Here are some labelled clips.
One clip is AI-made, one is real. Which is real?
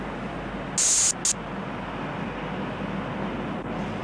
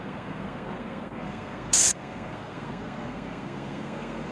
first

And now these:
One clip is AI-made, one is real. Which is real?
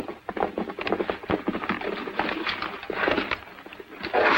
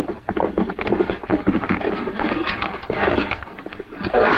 first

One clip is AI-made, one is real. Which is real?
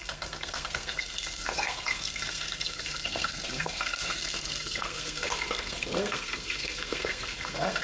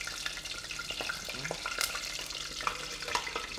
second